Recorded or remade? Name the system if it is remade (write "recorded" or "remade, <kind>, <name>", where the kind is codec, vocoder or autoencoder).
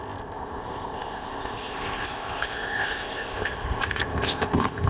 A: remade, codec, ZipCodec